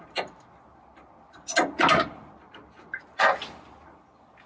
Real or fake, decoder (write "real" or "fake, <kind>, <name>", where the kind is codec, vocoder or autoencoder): real